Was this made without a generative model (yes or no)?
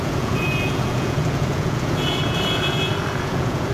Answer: no